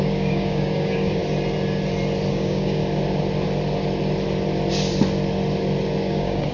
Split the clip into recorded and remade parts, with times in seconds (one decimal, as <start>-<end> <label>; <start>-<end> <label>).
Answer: 0.0-1.2 remade; 1.2-2.3 recorded; 2.3-2.8 remade; 2.8-6.0 recorded; 6.0-6.5 remade